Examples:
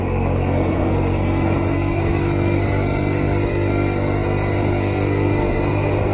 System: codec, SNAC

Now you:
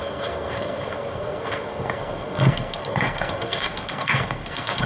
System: codec, SNAC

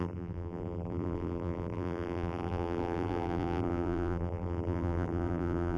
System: vocoder, BigVGAN v2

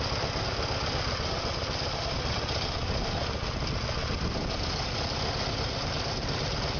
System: none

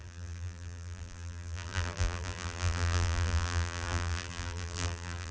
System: vocoder, BigVGAN v2